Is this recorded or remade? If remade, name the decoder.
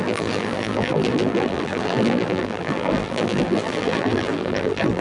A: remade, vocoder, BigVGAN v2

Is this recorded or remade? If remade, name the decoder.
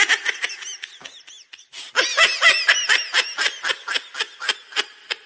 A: recorded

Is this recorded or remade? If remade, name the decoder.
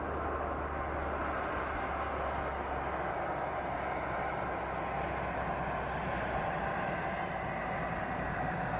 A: recorded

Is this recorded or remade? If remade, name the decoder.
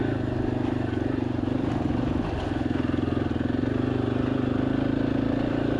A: recorded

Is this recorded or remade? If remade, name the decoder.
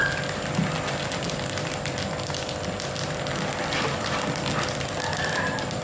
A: recorded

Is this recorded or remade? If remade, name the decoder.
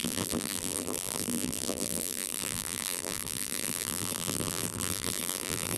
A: remade, vocoder, BigVGAN v2